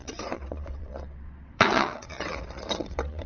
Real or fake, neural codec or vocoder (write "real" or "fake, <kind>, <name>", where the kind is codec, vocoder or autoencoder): fake, vocoder, WaveNeXt